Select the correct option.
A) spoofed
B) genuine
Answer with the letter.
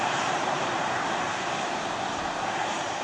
A